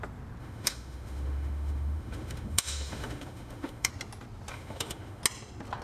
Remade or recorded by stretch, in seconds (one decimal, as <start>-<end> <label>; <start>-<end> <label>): 0.0-0.4 recorded; 0.4-3.9 remade; 3.9-4.5 recorded; 4.5-5.2 remade; 5.2-5.8 recorded